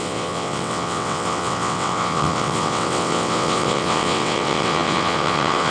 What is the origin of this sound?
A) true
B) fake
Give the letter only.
B